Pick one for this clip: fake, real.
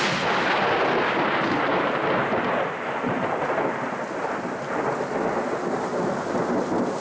real